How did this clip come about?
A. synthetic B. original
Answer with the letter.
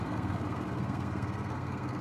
A